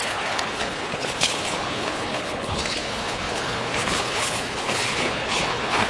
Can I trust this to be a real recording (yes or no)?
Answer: no